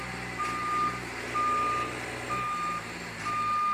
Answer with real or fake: real